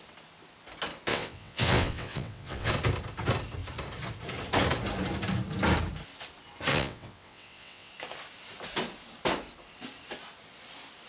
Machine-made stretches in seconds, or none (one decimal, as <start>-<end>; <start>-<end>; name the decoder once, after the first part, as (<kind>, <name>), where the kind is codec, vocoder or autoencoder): 1.1-2.7 (vocoder, WaveNeXt); 6.7-7.9